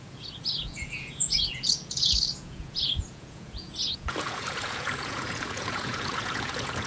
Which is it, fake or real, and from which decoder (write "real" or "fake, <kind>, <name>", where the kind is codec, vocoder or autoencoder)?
fake, vocoder, Vocos